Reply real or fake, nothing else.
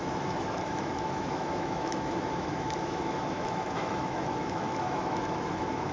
fake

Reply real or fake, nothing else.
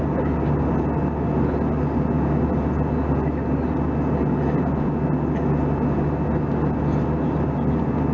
real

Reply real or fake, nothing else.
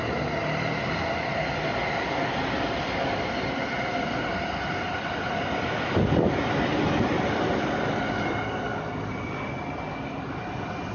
real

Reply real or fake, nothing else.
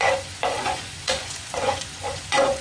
fake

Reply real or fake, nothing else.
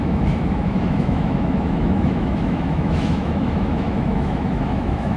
fake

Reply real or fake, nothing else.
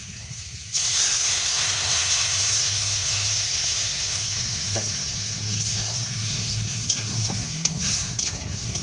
fake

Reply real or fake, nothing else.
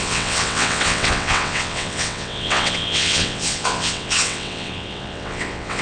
fake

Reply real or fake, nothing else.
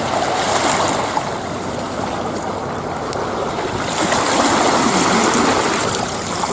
real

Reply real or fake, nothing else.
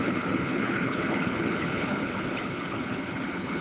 fake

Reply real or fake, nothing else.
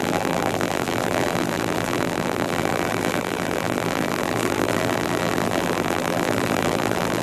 fake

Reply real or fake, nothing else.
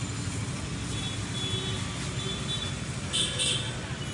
real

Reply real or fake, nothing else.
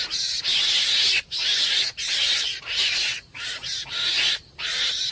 real